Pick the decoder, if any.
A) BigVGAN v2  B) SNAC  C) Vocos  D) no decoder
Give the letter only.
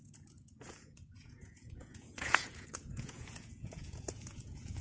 C